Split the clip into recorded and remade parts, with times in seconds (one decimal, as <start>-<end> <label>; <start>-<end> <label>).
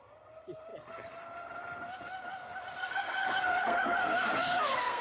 0.0-2.8 recorded; 2.8-5.0 remade